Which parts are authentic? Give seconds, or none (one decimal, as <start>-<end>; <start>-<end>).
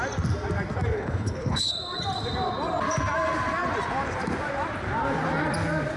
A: 0.0-0.9; 1.7-6.0